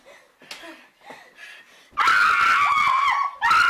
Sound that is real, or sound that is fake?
real